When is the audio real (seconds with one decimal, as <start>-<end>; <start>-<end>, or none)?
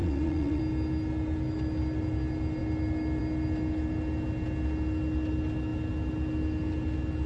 0.6-7.3